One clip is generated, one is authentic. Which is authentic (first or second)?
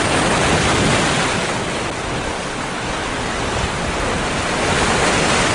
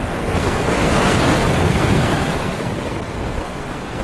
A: first